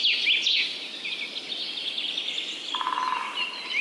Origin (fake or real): real